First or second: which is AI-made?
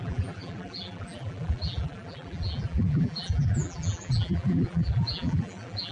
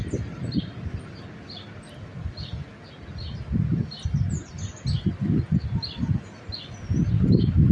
first